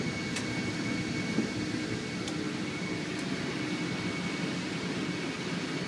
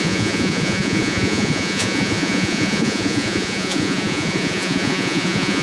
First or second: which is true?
first